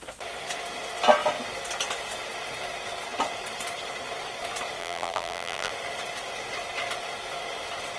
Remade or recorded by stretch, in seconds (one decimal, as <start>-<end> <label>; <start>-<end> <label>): 0.0-4.8 recorded; 4.8-5.7 remade; 5.7-8.0 recorded

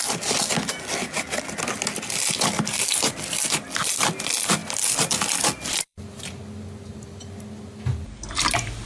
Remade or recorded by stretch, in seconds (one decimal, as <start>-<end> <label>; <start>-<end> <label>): 0.0-4.6 recorded; 4.6-6.0 remade; 6.0-8.9 recorded

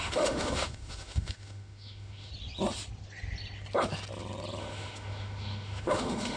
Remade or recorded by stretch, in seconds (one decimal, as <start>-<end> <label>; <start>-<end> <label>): 0.0-2.3 remade; 2.3-4.6 recorded; 4.6-6.4 remade

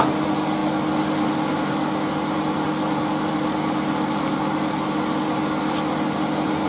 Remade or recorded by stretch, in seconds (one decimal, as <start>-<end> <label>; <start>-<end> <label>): 0.0-6.7 recorded

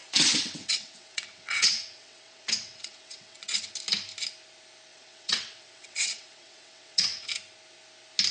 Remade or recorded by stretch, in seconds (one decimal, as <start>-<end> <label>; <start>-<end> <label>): 0.0-3.7 remade; 3.7-4.9 recorded; 4.9-7.3 remade; 7.3-8.3 recorded

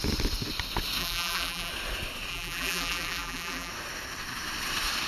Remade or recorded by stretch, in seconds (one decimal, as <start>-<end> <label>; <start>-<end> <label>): 0.0-1.0 recorded; 1.0-1.7 remade; 1.7-2.3 recorded; 2.3-3.7 remade; 3.7-5.1 recorded